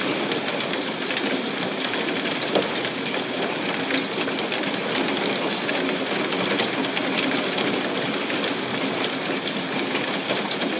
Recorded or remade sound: recorded